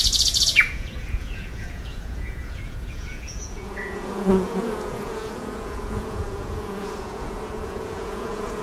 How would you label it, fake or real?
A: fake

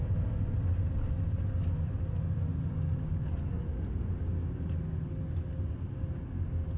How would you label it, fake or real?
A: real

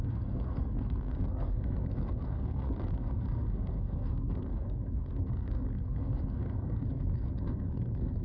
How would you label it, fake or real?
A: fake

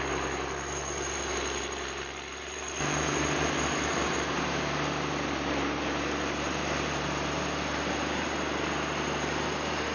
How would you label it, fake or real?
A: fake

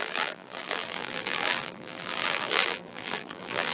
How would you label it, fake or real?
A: fake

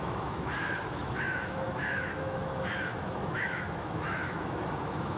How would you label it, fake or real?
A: fake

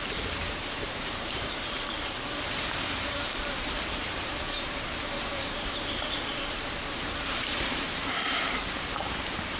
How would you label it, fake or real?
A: fake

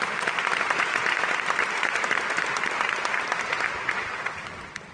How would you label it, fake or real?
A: real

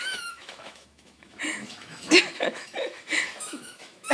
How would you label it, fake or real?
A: fake